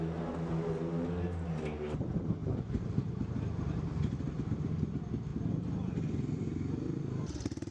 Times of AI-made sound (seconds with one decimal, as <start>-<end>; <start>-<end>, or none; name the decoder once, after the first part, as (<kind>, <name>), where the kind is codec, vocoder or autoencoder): 2.4-4.3 (vocoder, BigVGAN v2)